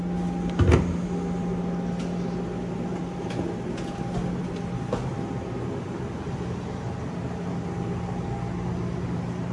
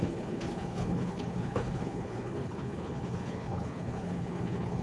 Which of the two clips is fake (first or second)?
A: second